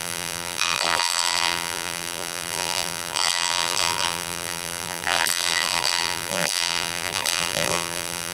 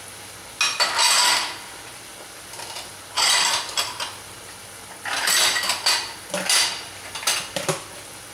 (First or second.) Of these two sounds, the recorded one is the second